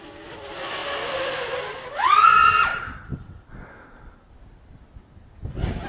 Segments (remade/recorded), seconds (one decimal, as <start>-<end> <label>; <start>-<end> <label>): 0.0-5.9 recorded